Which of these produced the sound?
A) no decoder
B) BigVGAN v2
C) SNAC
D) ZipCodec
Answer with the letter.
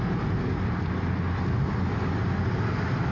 A